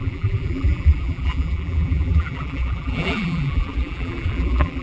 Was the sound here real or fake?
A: fake